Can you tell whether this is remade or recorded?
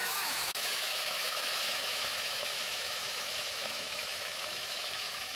remade